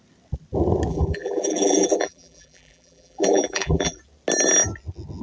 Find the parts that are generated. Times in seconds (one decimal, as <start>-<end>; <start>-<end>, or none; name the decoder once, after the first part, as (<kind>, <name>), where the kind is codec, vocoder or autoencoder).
0.9-4.0 (vocoder, BigVGAN v2)

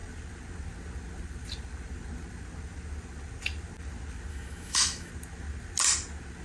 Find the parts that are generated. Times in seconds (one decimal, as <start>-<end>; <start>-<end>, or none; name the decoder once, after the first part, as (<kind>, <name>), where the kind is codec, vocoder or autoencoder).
4.3-5.1 (autoencoder, DAC-VAE)

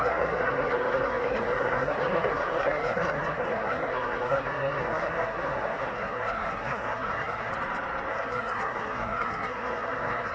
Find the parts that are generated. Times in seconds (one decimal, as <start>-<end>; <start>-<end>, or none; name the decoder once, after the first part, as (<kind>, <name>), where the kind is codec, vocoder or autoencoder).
0.0-7.5 (codec, SNAC); 8.1-10.3